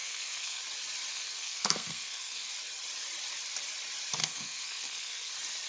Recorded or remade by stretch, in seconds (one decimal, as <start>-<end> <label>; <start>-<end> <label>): 0.0-0.6 remade; 0.6-1.1 recorded; 1.1-2.5 remade; 2.5-4.2 recorded; 4.2-5.3 remade; 5.3-5.7 recorded